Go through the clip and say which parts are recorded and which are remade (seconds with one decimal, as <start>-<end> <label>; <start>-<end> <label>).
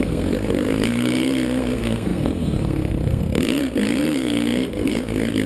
0.0-5.5 remade